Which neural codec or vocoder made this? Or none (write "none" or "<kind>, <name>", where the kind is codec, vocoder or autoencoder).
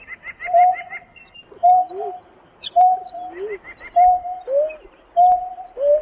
none